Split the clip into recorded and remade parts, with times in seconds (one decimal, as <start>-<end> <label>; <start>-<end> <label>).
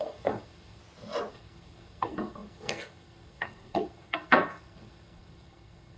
0.0-0.8 remade; 0.8-1.3 recorded; 1.3-6.0 remade